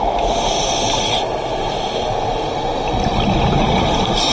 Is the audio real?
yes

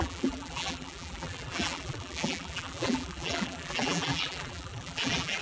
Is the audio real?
no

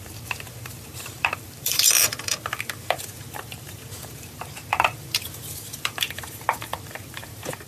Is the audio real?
no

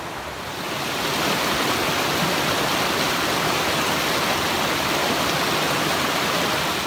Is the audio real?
yes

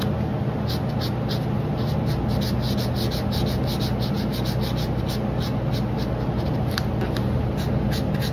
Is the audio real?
yes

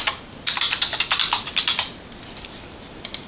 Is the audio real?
yes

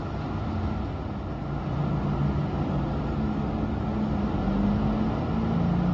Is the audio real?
yes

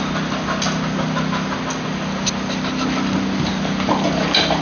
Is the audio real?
yes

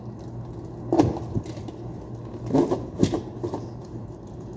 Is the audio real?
yes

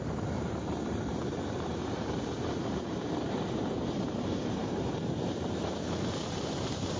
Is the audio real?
no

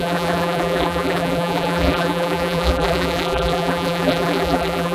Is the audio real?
no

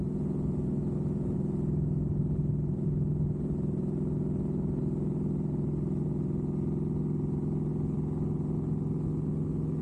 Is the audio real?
yes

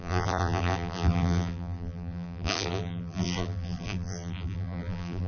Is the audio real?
no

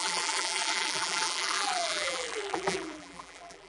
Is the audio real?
no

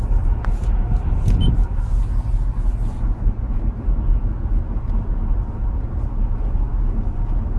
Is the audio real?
yes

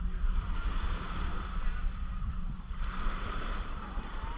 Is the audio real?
no